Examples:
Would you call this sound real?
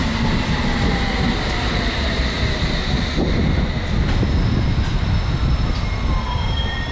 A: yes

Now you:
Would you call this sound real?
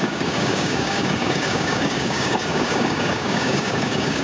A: no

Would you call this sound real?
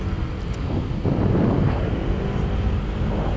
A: yes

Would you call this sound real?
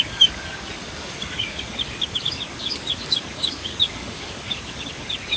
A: no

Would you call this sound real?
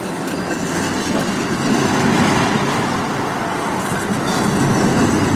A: yes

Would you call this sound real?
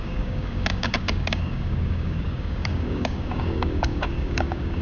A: no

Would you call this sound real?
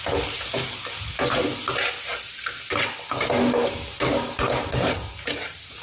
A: yes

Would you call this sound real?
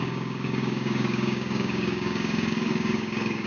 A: no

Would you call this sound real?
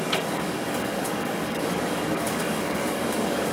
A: no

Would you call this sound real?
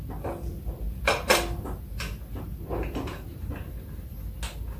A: yes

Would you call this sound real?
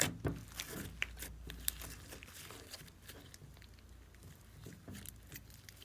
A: yes